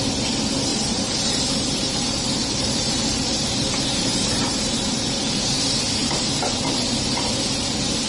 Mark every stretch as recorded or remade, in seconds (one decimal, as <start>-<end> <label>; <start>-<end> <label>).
0.0-0.7 recorded; 0.7-5.6 remade; 5.6-8.1 recorded